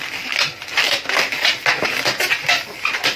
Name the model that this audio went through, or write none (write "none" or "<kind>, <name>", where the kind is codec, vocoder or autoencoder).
none